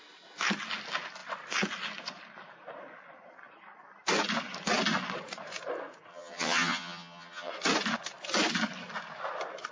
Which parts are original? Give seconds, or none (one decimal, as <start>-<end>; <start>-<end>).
0.0-6.1; 7.5-9.7